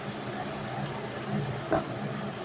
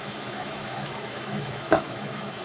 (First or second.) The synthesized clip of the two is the second